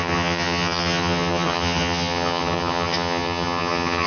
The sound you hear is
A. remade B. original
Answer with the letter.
A